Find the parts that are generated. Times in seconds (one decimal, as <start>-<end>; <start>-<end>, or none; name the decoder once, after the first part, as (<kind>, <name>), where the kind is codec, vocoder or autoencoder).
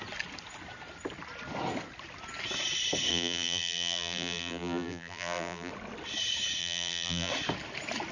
3.1-5.7 (vocoder, BigVGAN v2); 6.6-7.3